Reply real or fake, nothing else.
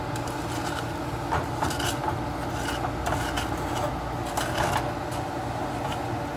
real